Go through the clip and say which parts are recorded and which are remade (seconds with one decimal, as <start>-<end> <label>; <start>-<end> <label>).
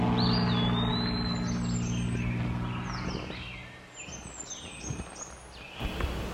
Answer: 0.0-6.3 recorded